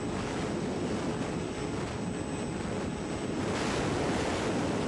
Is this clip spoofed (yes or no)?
no